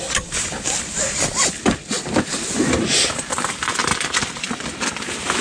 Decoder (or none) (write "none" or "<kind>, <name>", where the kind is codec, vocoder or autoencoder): none